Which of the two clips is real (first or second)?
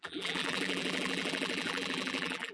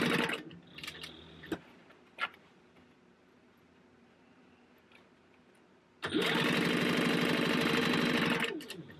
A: second